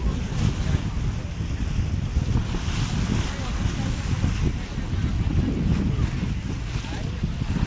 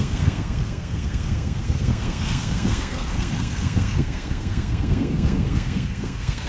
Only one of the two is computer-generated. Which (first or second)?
second